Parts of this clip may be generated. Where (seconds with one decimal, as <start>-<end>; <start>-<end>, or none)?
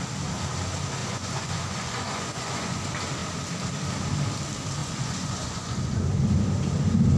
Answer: 1.0-2.8; 4.8-6.1